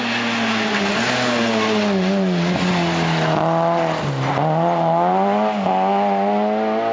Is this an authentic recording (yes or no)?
yes